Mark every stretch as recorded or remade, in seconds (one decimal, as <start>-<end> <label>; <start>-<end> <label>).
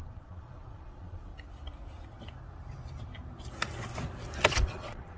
0.0-1.3 remade; 1.3-4.4 recorded; 4.4-5.2 remade